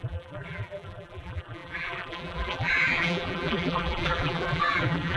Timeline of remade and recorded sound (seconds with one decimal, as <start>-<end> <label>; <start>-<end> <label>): 0.0-5.2 remade